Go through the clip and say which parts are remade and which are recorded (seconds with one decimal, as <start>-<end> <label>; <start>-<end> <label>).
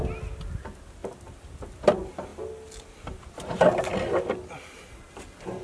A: 0.0-5.6 recorded